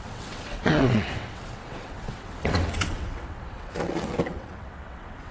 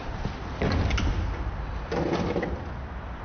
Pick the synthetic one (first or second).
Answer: first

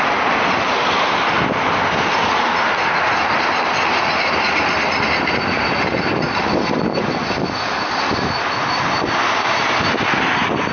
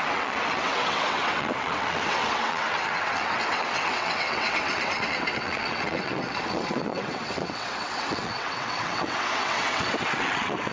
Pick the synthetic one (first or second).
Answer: second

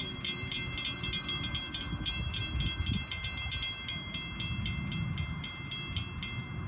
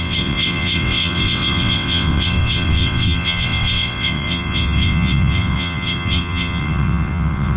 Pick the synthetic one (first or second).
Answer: second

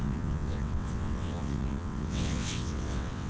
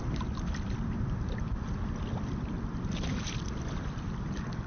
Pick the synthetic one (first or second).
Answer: first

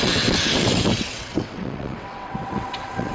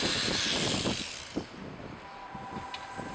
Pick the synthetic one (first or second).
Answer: first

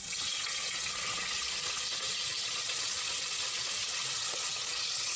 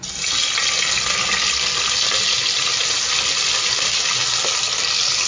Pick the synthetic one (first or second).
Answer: first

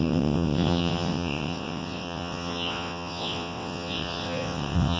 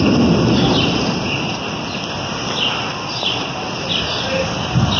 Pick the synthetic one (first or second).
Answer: first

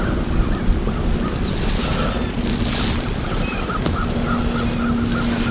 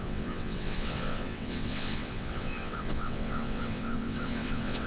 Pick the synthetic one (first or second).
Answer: second